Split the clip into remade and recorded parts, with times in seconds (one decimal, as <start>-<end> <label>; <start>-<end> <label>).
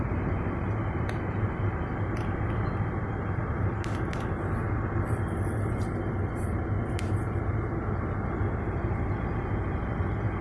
0.0-10.4 recorded